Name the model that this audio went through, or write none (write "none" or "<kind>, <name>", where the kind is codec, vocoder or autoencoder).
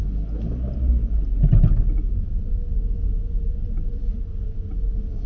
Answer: none